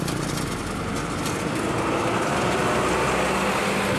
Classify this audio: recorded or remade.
recorded